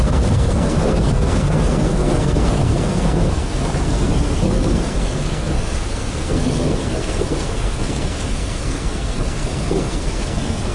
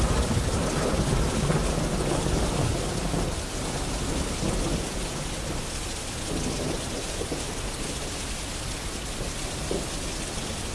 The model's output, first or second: first